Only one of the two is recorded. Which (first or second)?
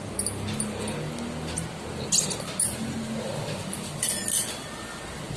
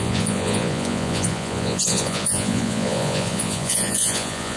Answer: first